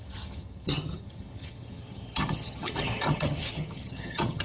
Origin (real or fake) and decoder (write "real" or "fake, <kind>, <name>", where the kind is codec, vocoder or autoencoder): fake, vocoder, HiFi-GAN